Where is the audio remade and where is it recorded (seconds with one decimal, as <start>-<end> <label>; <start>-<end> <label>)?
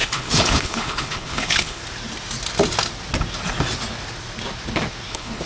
0.0-1.8 remade; 1.8-5.1 recorded; 5.1-5.5 remade